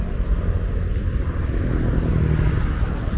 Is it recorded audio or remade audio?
recorded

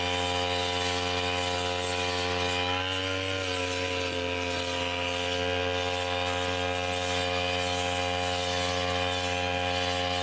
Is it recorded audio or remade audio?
recorded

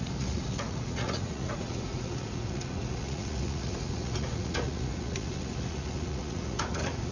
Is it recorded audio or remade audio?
remade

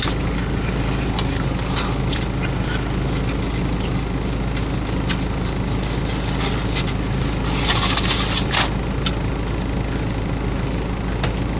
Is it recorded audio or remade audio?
recorded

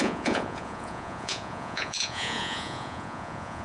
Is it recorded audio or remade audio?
remade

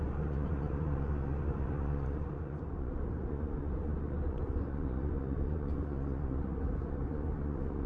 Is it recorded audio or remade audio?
remade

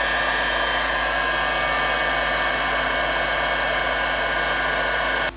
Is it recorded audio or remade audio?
recorded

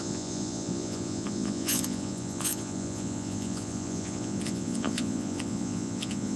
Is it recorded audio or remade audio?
remade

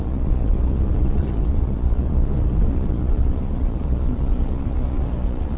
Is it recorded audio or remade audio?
remade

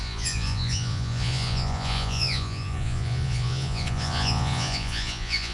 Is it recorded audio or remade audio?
remade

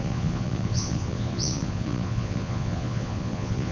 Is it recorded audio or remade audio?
remade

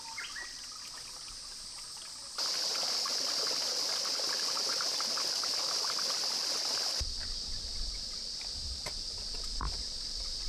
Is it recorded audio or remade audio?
recorded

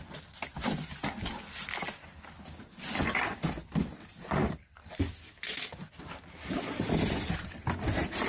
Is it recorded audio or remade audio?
recorded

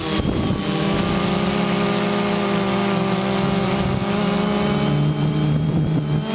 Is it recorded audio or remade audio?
recorded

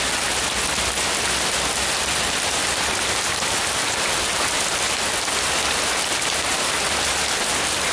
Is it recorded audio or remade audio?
recorded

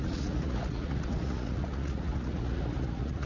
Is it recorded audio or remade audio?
remade